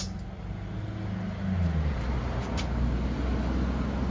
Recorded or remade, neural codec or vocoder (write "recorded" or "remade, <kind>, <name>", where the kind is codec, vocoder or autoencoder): recorded